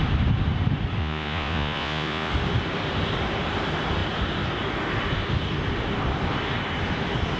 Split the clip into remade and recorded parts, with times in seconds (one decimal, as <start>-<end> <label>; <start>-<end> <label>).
0.0-1.0 recorded; 1.0-2.3 remade; 2.3-7.4 recorded